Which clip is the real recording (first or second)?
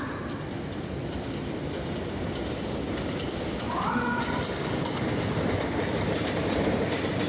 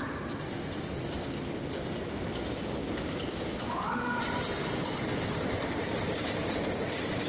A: second